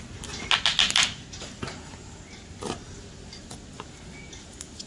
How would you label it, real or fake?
real